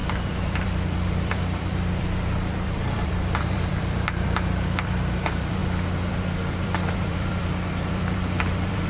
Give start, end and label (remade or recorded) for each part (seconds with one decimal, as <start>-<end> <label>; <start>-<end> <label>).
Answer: 0.0-5.6 remade; 5.6-6.1 recorded; 6.1-8.9 remade

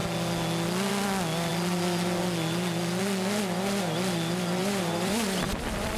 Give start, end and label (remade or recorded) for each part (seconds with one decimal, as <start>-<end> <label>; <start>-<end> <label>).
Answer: 0.0-4.6 recorded; 4.6-6.0 remade

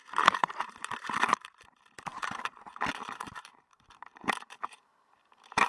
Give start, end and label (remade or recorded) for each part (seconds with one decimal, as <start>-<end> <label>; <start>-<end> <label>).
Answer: 0.0-5.7 remade

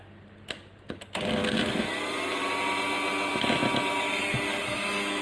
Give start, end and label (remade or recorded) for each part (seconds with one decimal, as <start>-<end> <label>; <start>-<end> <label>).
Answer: 0.0-5.2 recorded

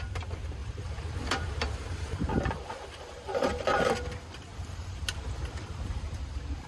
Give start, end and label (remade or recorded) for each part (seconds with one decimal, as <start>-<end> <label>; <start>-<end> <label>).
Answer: 0.0-0.6 recorded; 0.6-3.9 remade; 3.9-4.5 recorded; 4.5-5.0 remade; 5.0-6.7 recorded

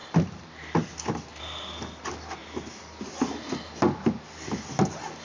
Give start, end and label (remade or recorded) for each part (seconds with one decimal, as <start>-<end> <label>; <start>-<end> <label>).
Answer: 0.0-5.2 recorded